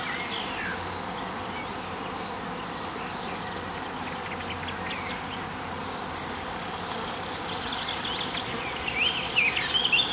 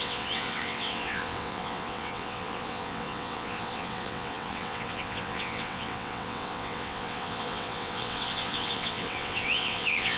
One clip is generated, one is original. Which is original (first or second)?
first